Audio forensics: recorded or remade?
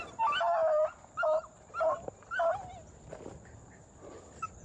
recorded